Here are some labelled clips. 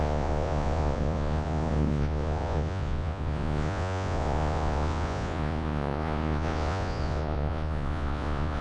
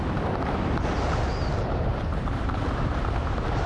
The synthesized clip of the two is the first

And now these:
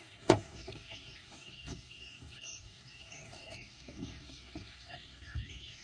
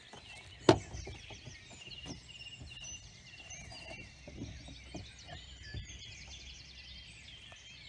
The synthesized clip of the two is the first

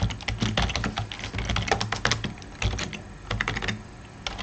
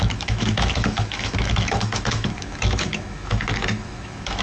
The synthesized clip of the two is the second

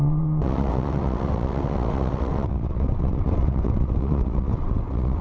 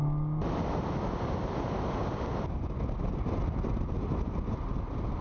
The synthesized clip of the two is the first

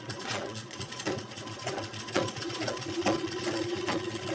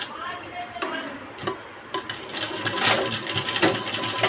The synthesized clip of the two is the first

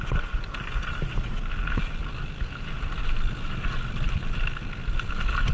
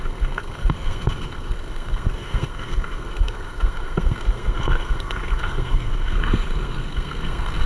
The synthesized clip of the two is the second